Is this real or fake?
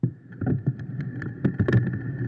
fake